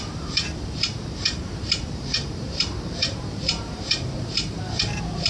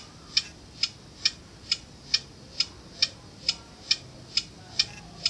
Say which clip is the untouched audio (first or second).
second